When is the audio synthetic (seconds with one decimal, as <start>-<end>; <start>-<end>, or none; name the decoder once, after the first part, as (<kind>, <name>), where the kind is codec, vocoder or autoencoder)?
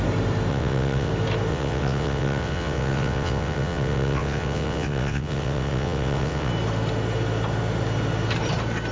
0.5-1.1 (vocoder, WaveNeXt); 1.5-6.5